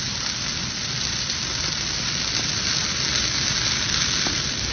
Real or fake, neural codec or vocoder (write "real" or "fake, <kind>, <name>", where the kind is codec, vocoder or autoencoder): real